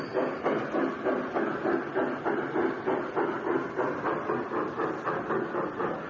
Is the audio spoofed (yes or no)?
no